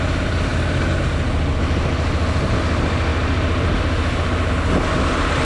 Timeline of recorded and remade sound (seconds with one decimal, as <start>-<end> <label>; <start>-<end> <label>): 0.0-3.1 recorded; 3.1-4.5 remade; 4.5-5.4 recorded